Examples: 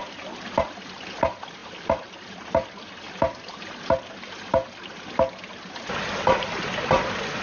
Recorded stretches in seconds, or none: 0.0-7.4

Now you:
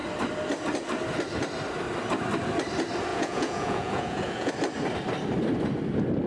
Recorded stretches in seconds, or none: 0.0-3.1; 4.5-6.3

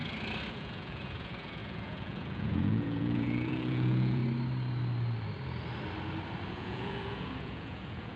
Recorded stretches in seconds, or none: 0.0-0.5; 4.2-6.5

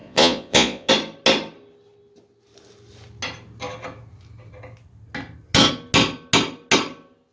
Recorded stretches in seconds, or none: 0.9-7.3

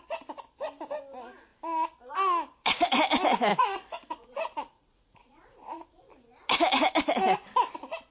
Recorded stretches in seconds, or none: 0.0-3.5; 6.0-8.1

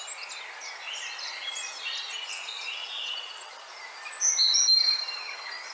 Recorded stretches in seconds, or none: 0.0-2.8; 3.8-5.7

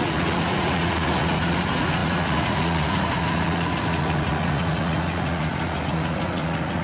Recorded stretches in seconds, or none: none